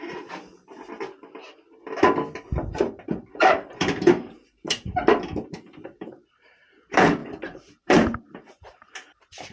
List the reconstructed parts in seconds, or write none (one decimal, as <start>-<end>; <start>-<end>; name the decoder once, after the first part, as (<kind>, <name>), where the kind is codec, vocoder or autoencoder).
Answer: 0.0-0.8 (vocoder, BigVGAN v2); 2.8-9.5